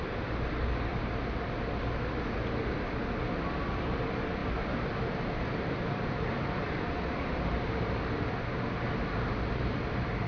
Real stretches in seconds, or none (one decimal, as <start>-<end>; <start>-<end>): 0.9-3.2; 4.4-5.0